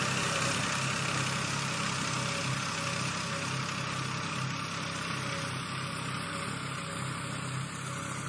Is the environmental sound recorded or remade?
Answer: recorded